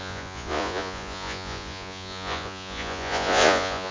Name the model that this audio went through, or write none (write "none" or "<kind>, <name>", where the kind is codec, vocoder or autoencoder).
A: vocoder, Vocos